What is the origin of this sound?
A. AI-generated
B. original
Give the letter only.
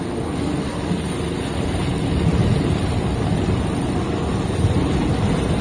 B